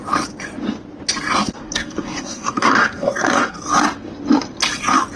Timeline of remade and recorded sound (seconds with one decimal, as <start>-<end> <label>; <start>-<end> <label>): 0.0-1.6 recorded; 1.6-3.6 remade; 3.6-5.2 recorded